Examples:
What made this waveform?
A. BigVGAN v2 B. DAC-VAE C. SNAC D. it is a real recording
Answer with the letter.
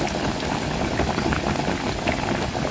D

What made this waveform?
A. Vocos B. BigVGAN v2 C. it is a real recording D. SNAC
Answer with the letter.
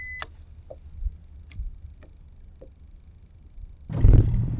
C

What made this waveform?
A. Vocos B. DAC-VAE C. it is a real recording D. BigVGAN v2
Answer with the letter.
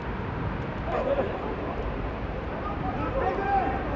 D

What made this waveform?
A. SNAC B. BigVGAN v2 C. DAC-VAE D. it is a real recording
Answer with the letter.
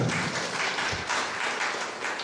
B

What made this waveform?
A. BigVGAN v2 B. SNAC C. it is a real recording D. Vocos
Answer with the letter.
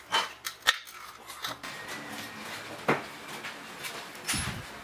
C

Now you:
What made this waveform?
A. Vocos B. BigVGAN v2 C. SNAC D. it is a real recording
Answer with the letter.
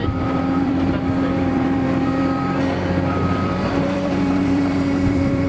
B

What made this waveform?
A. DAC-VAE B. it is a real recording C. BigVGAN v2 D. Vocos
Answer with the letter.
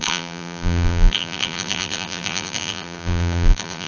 C